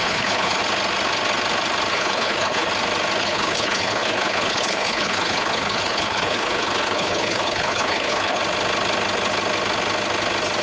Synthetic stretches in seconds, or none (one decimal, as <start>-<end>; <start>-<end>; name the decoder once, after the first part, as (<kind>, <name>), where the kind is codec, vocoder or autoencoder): 0.0-0.6 (codec, HILCodec); 1.9-2.7; 3.2-8.4